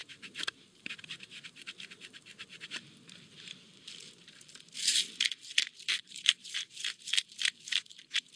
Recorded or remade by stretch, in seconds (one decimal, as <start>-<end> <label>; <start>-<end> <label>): 0.0-8.4 remade